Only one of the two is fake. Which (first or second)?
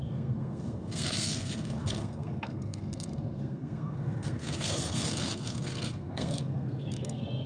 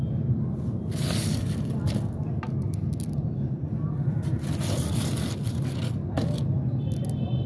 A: first